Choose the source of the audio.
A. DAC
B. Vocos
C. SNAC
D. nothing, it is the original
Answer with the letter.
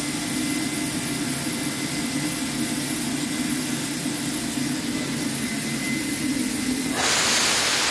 D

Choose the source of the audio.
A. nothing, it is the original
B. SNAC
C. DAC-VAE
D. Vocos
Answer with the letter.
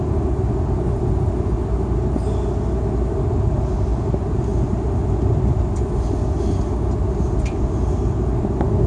A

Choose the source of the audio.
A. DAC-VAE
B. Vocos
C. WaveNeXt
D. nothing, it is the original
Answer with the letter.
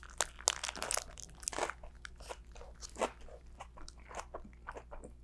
D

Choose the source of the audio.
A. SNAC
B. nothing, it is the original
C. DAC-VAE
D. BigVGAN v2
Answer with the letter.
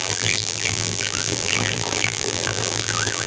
D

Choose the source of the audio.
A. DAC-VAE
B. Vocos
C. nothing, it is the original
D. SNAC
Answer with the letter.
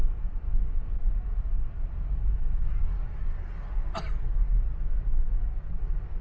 C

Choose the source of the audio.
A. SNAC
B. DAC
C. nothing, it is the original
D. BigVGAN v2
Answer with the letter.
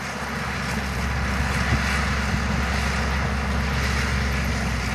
C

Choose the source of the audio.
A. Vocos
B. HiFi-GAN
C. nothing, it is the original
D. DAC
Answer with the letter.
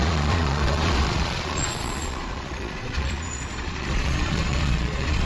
A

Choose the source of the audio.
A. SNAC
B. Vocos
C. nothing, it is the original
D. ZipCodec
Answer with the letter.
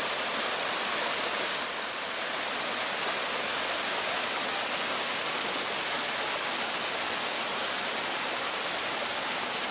C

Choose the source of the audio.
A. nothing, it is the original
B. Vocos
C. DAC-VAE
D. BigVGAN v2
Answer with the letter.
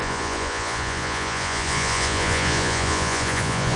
B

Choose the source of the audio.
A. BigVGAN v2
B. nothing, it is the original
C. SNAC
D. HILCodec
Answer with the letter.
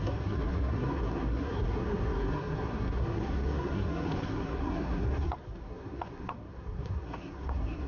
C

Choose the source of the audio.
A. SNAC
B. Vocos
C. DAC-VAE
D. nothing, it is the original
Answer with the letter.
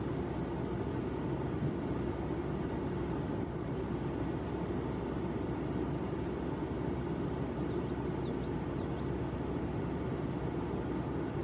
D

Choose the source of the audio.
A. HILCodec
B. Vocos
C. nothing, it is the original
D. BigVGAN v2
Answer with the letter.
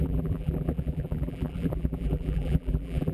D